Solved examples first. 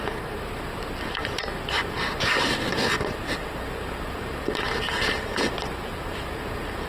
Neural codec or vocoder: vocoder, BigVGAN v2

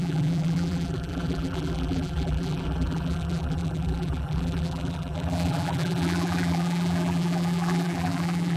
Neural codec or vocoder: vocoder, BigVGAN v2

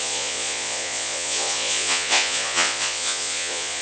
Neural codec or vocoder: vocoder, Vocos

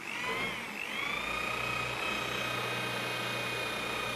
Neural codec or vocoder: none